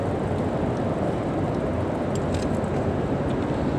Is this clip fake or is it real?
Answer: real